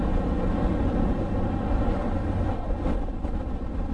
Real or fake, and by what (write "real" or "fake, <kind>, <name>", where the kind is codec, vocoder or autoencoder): real